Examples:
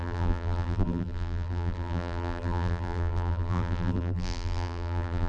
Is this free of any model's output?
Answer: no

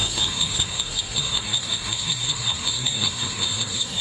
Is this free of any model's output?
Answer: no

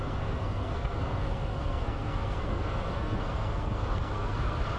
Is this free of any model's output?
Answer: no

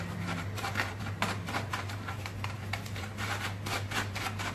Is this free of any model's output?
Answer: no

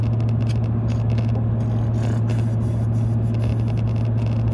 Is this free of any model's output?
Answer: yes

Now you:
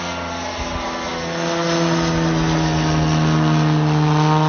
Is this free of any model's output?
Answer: yes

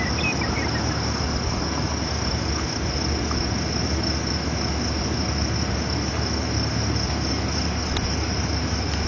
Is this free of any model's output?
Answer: yes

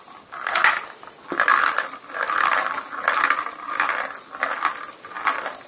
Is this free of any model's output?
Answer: yes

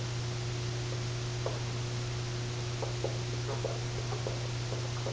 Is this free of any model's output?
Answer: yes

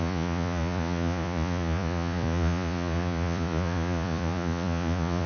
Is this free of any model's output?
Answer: no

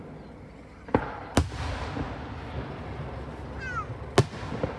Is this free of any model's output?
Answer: yes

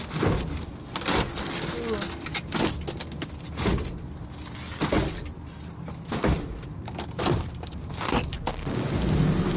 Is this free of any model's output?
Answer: yes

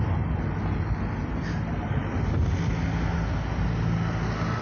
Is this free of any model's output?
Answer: yes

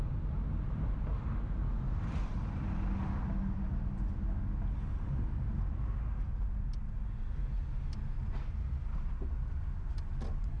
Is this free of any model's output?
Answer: yes